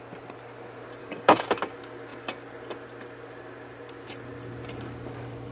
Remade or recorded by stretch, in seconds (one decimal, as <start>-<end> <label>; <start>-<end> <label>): 0.0-1.0 recorded; 1.0-1.6 remade; 1.6-5.5 recorded